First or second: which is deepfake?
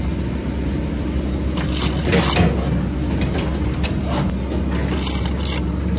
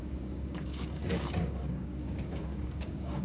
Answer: second